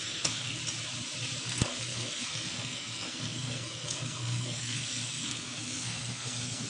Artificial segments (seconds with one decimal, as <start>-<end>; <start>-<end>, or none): 0.0-0.6; 1.4-6.7